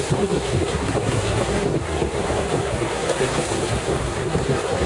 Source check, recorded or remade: remade